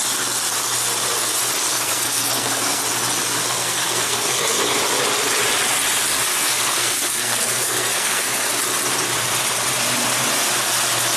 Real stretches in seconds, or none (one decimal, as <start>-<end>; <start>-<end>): 0.0-1.7; 2.8-3.4; 4.8-6.3; 8.5-11.2